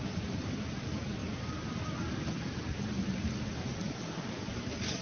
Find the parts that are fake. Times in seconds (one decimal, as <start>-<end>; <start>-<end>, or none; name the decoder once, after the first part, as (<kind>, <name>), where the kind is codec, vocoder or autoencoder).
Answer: none